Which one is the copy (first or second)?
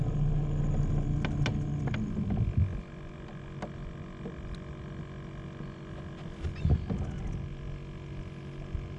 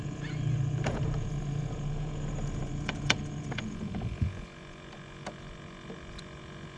second